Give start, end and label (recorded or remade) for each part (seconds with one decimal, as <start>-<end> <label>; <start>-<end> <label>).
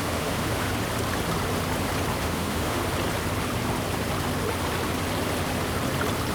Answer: 0.0-0.7 remade; 0.7-2.2 recorded; 2.2-2.8 remade; 2.8-6.3 recorded